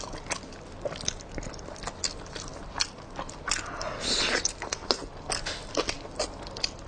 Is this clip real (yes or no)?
yes